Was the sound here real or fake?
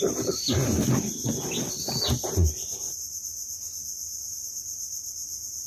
real